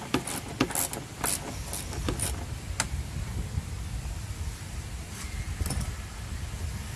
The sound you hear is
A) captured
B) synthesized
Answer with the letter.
A